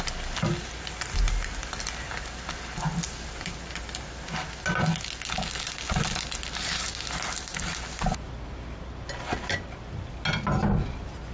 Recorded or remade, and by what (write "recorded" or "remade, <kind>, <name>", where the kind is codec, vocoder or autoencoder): recorded